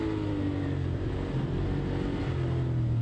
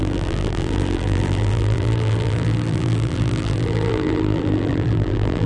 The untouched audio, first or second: first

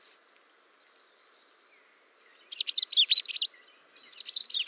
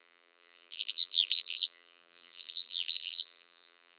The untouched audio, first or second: first